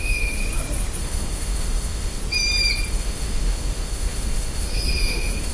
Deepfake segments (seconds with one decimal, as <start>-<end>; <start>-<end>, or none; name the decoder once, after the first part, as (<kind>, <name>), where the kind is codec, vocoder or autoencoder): 0.0-0.4 (autoencoder, DAC-VAE); 1.0-2.2; 2.9-5.5

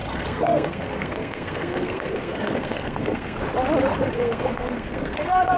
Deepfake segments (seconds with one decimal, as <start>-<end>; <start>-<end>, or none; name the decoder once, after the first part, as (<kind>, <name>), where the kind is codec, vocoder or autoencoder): 0.0-3.4 (codec, SNAC); 4.0-5.6

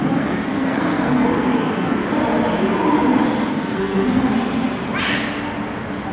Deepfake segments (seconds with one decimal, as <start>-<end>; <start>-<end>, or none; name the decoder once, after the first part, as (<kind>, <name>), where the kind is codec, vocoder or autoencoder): 0.0-2.0 (codec, SNAC); 3.5-4.3

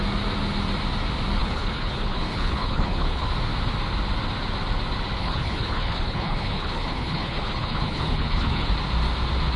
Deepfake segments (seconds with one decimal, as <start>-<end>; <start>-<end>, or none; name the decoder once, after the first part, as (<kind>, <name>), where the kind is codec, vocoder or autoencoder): 1.4-3.3 (codec, HILCodec); 5.2-8.7

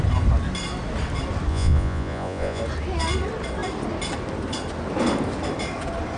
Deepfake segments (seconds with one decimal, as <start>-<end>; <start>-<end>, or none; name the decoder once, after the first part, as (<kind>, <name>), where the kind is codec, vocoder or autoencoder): 1.5-2.6 (vocoder, Vocos)